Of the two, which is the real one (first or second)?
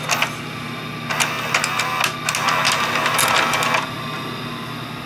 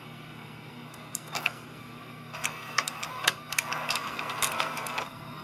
first